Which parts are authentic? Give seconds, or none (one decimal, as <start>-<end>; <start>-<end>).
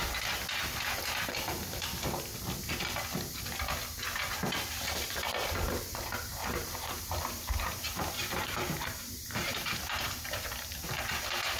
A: 0.0-6.3; 11.0-11.6